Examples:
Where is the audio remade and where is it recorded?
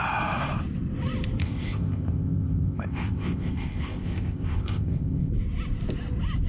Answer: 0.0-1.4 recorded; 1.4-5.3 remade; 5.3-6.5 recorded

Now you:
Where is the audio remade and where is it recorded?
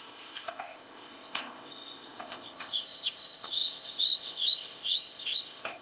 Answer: 0.0-5.8 remade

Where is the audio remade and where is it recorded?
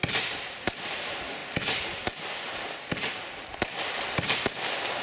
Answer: 0.0-5.0 recorded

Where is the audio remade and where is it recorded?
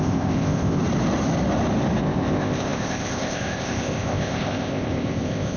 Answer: 0.0-0.8 remade; 0.8-2.0 recorded; 2.0-5.6 remade